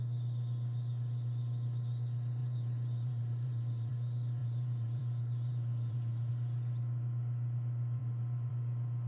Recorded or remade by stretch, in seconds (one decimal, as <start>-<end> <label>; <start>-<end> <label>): 0.0-2.4 recorded; 2.4-3.9 remade; 3.9-4.4 recorded; 4.4-6.3 remade; 6.3-8.0 recorded; 8.0-8.5 remade; 8.5-9.1 recorded